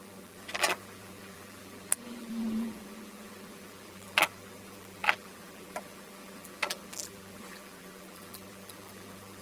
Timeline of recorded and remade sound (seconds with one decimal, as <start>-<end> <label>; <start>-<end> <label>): 0.0-9.4 remade